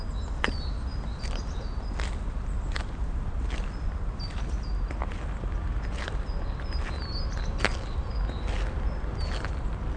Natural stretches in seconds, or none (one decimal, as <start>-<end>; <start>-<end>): 0.0-10.0